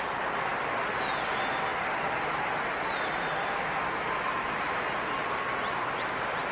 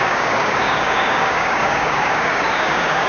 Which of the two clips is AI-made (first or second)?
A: second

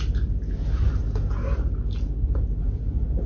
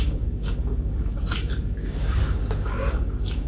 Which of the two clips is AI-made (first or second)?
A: second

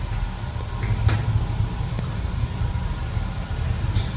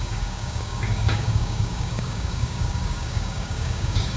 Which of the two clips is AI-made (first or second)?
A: second